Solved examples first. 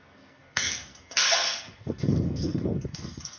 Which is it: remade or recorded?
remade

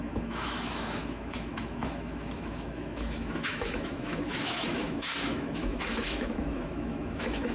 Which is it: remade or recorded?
remade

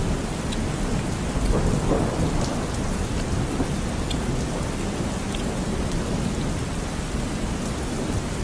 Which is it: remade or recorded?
recorded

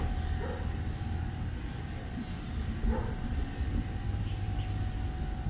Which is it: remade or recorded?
recorded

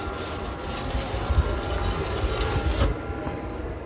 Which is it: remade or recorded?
recorded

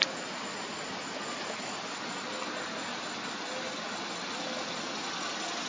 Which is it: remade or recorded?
recorded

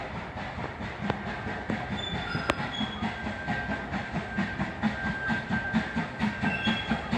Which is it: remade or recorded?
recorded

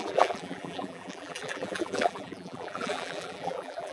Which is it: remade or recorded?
remade